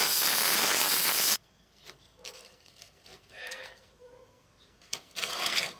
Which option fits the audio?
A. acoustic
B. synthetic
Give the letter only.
B